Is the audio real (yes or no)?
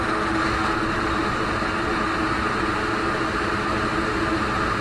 yes